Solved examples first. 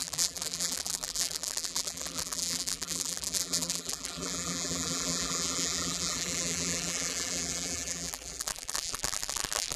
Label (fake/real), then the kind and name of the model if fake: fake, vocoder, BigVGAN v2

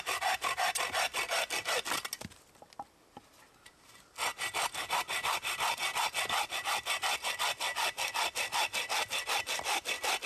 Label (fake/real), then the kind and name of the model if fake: real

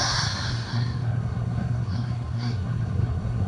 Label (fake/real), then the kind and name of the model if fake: fake, codec, SNAC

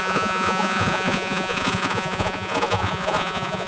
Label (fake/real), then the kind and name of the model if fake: fake, vocoder, Vocos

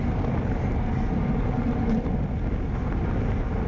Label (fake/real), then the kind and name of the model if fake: real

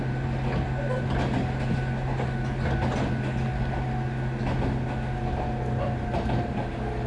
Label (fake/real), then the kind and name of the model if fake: real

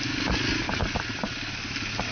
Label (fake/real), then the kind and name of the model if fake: real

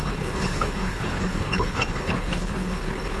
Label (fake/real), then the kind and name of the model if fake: fake, codec, HILCodec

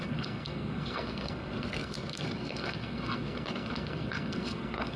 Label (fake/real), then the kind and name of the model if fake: fake, codec, SNAC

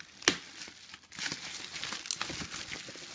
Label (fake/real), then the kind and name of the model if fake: real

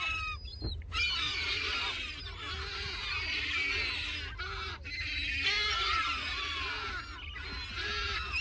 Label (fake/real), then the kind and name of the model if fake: real